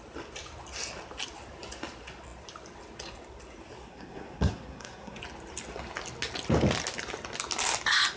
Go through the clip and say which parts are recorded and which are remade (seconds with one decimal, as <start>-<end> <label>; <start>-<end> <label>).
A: 0.0-3.9 recorded; 3.9-5.2 remade; 5.2-8.2 recorded